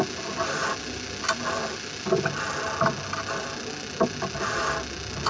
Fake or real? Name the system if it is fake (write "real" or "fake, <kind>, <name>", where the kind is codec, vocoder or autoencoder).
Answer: real